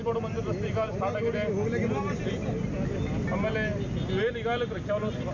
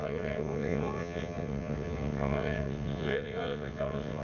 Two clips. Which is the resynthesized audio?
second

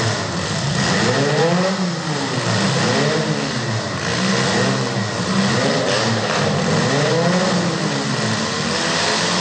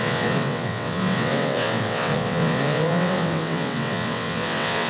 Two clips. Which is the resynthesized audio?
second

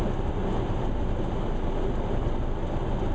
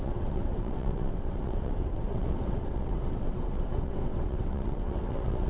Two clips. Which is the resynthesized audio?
second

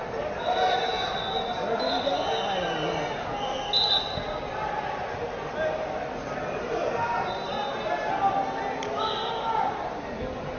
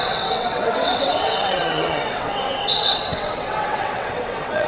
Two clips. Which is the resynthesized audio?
second